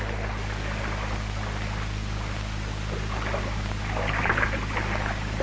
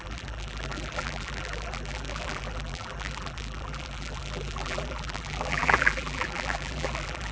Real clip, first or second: first